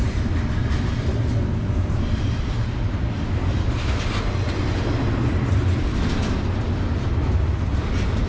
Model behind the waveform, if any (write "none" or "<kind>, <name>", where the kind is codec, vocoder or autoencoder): none